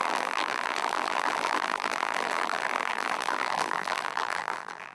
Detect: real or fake fake